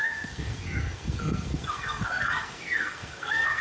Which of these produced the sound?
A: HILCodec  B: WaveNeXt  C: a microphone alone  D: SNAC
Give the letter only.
D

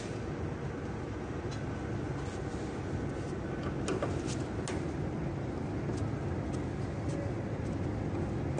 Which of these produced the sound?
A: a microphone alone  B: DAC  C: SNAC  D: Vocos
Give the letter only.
A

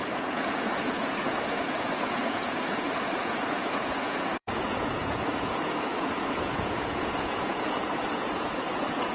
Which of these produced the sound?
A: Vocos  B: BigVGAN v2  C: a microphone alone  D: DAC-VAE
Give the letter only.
A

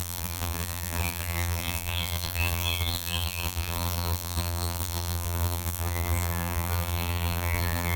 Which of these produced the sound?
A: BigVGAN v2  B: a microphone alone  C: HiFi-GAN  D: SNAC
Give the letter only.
A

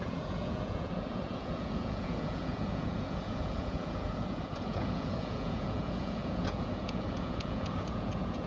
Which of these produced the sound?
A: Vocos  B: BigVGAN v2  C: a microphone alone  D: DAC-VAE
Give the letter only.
A